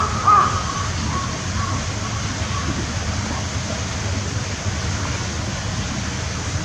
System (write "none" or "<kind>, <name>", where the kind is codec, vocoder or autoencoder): none